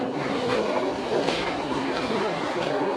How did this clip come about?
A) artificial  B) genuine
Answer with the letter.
A